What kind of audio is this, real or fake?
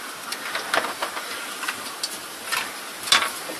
real